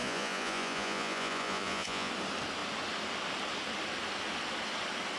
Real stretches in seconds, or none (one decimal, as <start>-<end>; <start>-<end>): 2.1-5.2